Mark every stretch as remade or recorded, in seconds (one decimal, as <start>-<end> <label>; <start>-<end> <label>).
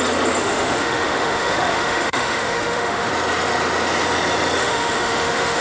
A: 0.0-0.4 recorded; 0.4-3.1 remade; 3.1-4.6 recorded; 4.6-5.6 remade